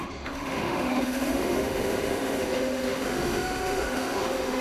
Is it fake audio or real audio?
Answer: fake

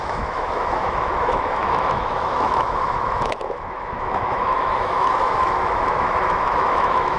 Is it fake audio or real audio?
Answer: fake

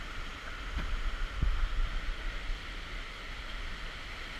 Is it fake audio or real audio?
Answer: real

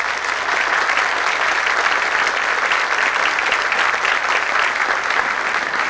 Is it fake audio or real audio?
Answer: real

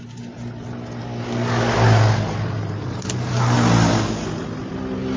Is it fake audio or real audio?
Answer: real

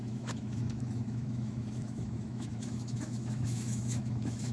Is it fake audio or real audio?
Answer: fake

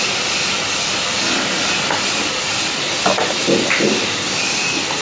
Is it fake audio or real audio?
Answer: real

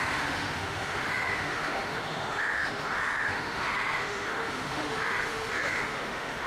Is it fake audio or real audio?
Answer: fake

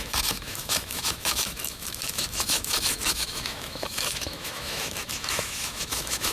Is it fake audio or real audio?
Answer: fake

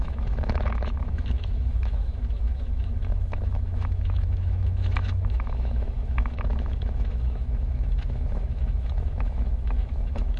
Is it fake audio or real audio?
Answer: fake